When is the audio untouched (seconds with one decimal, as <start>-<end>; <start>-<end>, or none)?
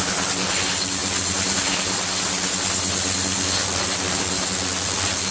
0.0-5.3